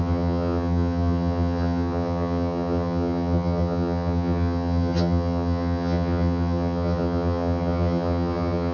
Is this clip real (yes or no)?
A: no